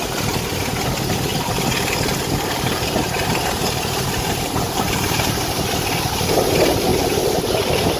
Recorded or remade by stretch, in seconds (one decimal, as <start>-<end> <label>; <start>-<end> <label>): 0.0-1.3 recorded; 1.3-5.7 remade; 5.7-6.9 recorded; 6.9-8.0 remade